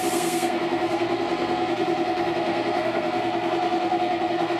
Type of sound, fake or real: fake